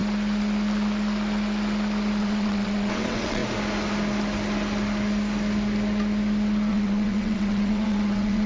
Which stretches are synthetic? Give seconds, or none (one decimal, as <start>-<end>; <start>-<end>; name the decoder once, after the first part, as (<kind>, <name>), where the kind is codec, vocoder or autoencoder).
2.2-3.4 (vocoder, WaveNeXt); 6.7-8.5